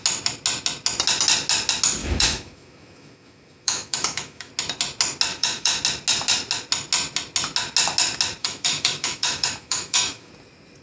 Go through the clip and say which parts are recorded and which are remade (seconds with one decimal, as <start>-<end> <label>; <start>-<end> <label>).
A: 0.0-2.0 recorded; 2.0-4.5 remade; 4.5-5.3 recorded; 5.3-5.8 remade; 5.8-8.4 recorded; 8.4-10.3 remade; 10.3-10.8 recorded